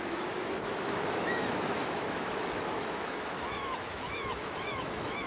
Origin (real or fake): fake